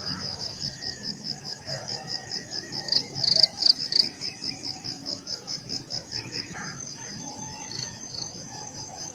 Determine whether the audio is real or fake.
fake